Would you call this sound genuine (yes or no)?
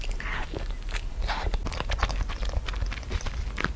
yes